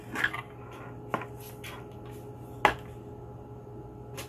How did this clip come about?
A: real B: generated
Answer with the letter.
A